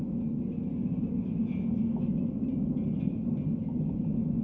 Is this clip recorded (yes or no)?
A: yes